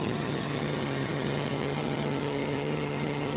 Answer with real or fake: fake